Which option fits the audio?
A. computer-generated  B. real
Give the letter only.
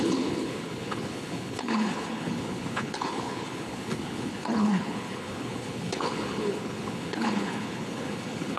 A